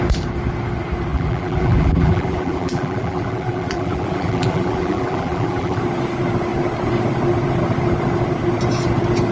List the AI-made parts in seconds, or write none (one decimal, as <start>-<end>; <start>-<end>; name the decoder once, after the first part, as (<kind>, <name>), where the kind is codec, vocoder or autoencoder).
1.1-5.8 (vocoder, BigVGAN v2)